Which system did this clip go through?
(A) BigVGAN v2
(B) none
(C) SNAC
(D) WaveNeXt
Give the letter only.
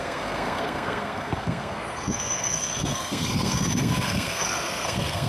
C